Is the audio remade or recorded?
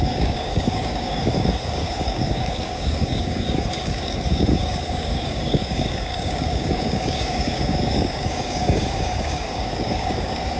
remade